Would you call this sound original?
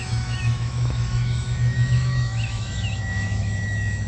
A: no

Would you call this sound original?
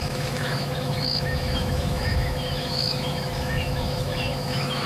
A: no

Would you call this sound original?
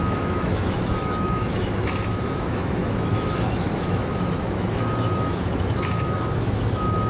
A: no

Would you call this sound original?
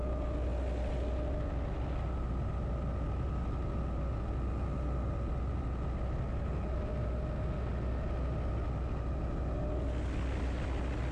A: yes